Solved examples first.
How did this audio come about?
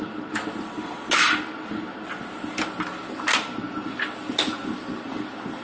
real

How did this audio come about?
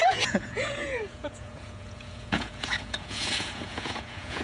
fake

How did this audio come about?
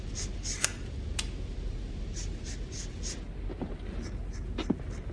real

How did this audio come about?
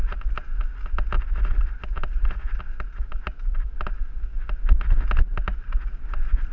real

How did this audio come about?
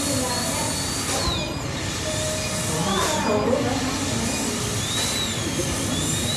real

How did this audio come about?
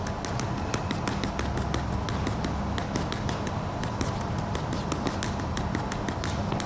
real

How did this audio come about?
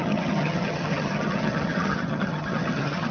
fake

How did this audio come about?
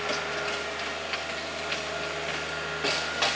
real